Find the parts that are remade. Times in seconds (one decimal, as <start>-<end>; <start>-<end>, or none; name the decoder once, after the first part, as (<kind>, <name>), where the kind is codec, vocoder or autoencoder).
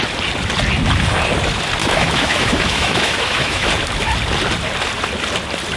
1.8-3.7 (autoencoder, DAC-VAE)